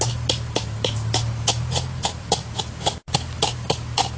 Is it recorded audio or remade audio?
recorded